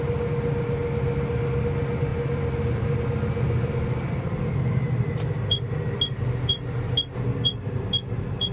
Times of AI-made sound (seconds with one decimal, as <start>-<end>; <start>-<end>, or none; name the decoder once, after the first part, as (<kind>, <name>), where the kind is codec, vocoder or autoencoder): none